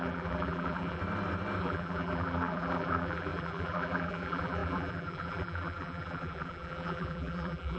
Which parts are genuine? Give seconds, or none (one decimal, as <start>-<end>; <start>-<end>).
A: 1.0-1.6